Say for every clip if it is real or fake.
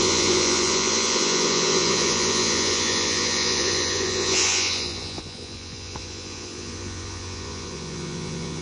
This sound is fake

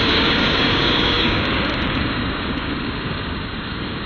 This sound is fake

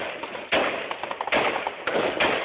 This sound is real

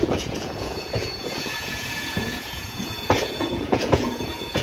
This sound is fake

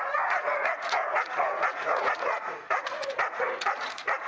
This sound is fake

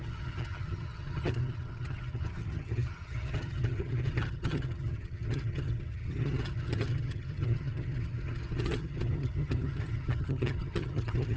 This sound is fake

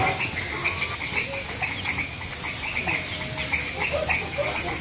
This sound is real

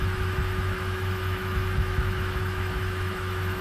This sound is fake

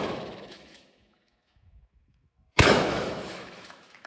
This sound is fake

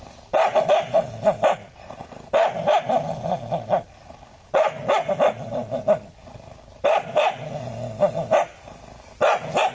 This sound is real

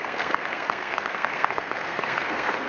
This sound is fake